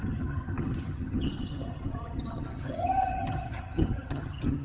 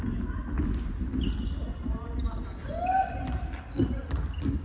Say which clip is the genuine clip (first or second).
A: second